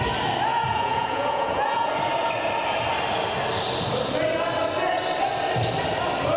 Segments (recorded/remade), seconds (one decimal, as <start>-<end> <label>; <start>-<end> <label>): 0.0-0.5 recorded; 0.5-1.9 remade; 1.9-6.4 recorded